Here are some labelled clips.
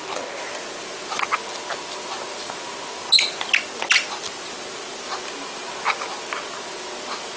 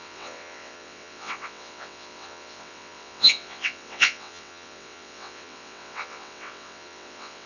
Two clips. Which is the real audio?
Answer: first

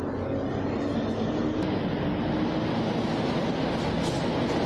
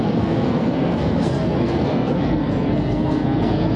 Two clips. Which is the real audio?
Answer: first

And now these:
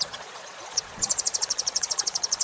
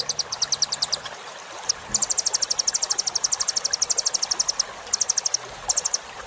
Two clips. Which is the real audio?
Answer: second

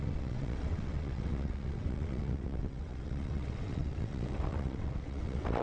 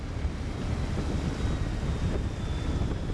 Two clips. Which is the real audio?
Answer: second